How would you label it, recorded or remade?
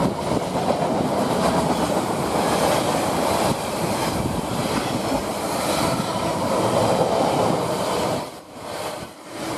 remade